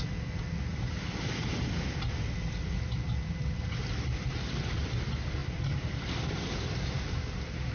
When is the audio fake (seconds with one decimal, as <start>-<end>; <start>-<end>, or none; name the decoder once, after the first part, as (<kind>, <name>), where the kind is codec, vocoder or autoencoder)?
0.7-3.6 (vocoder, BigVGAN v2); 5.4-7.0